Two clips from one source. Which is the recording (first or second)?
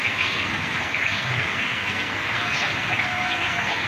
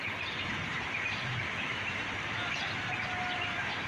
second